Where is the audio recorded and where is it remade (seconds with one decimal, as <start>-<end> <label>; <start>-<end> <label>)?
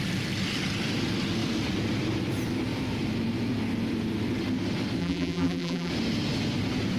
0.0-5.0 recorded; 5.0-5.9 remade; 5.9-7.0 recorded